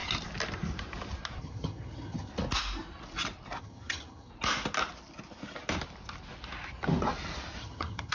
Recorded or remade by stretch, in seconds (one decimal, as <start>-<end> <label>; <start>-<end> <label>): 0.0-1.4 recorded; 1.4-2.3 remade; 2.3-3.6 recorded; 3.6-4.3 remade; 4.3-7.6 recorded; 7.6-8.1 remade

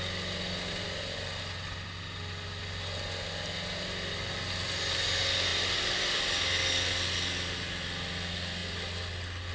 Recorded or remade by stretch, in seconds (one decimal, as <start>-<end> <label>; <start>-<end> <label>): 0.0-9.5 recorded

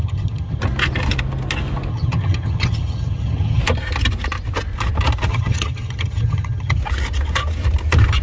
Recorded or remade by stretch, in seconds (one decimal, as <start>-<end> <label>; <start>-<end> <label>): 0.0-0.6 remade; 0.6-1.9 recorded; 1.9-3.6 remade; 3.6-5.3 recorded; 5.3-6.8 remade; 6.8-8.2 recorded

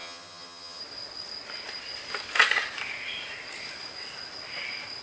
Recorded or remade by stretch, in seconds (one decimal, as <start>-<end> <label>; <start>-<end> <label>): 0.0-0.8 remade; 0.8-5.0 recorded

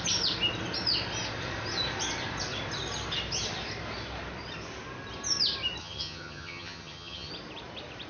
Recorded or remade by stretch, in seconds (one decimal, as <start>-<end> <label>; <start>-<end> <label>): 0.0-5.8 recorded; 5.8-7.3 remade; 7.3-8.1 recorded